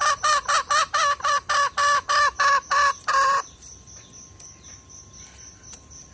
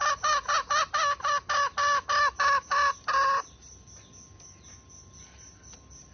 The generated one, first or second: first